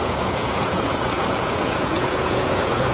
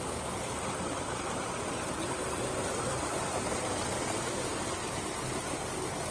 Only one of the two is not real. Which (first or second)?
first